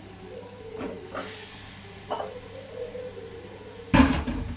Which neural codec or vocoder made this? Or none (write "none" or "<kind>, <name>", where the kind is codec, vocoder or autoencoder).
none